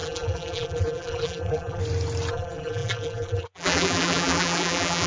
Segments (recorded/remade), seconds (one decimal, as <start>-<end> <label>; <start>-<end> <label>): 0.0-1.8 remade; 1.8-2.3 recorded; 2.3-5.1 remade